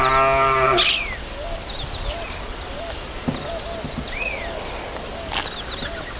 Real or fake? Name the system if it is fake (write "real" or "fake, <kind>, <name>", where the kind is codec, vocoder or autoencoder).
real